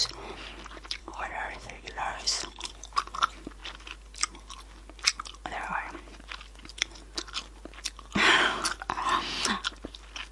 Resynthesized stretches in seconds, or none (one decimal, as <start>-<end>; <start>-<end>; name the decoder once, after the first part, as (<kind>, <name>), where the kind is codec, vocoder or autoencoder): 1.0-2.7 (codec, HILCodec)